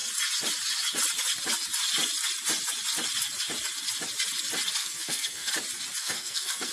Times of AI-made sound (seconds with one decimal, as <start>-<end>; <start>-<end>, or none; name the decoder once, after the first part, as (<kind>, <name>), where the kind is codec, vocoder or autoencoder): 4.8-5.5 (codec, SNAC); 6.0-6.7